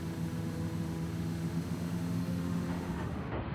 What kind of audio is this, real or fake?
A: fake